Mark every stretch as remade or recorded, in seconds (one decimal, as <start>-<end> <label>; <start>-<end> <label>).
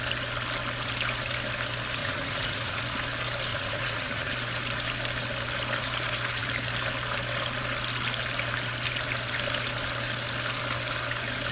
0.0-2.0 recorded; 2.0-2.8 remade; 2.8-3.5 recorded; 3.5-4.3 remade; 4.3-11.5 recorded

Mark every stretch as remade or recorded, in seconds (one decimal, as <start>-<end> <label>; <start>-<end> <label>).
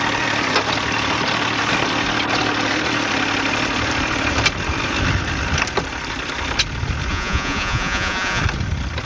0.0-7.1 recorded; 7.1-8.4 remade; 8.4-9.1 recorded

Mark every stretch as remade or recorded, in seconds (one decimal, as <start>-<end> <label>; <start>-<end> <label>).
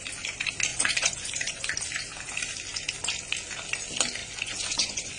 0.0-0.7 recorded; 0.7-1.7 remade; 1.7-4.2 recorded; 4.2-5.2 remade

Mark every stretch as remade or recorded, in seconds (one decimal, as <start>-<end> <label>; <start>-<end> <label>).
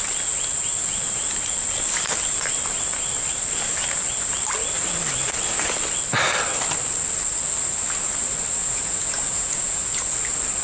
0.0-8.6 recorded; 8.6-9.8 remade; 9.8-10.6 recorded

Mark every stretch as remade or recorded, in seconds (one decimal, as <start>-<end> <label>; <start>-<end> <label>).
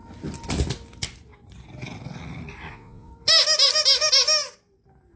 0.0-2.7 recorded; 2.7-3.1 remade; 3.1-5.2 recorded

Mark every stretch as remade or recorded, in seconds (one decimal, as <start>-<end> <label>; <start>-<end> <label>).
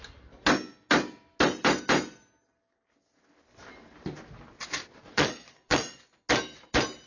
0.0-4.8 recorded; 4.8-6.0 remade; 6.0-7.1 recorded